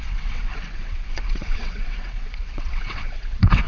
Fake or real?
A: fake